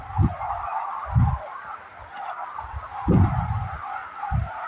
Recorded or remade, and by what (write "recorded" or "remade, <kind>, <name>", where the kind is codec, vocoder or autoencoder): remade, vocoder, BigVGAN v2